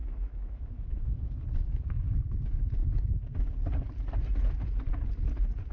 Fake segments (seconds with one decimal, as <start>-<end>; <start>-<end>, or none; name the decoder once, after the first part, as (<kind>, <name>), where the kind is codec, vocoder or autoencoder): 0.0-1.2 (autoencoder, DAC-VAE); 2.8-3.4